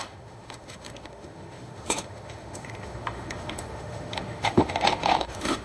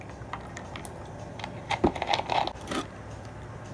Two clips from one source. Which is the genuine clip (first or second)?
second